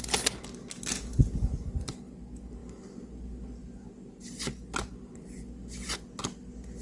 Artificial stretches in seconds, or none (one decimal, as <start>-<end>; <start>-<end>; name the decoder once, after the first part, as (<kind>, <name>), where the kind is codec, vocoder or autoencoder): none